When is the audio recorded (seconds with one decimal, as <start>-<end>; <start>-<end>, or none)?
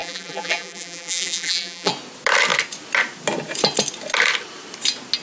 1.9-5.2